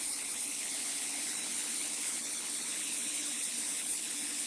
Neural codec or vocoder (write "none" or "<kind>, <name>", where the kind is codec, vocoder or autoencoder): codec, HILCodec